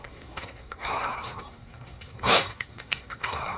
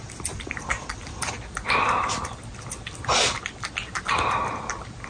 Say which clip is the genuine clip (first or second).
second